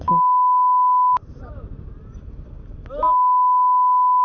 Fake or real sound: real